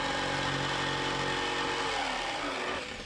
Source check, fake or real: real